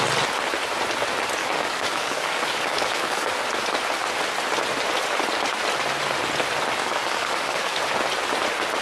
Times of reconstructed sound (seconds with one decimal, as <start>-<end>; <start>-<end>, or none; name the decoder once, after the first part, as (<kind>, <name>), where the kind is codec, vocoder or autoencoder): 1.4-3.3 (codec, DAC); 6.8-7.8